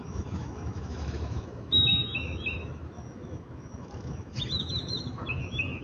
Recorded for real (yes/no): no